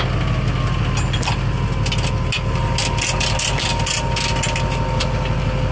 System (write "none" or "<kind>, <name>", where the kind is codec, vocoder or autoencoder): none